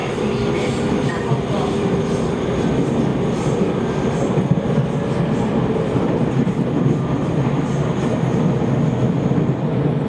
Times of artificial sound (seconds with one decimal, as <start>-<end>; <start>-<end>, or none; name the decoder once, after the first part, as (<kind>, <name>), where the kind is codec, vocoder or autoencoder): 1.1-3.1 (vocoder, BigVGAN v2); 5.2-8.8